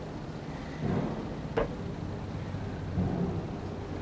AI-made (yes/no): no